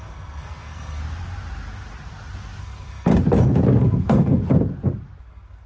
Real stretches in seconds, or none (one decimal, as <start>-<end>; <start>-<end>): 1.0-2.6; 3.1-3.8; 4.4-5.2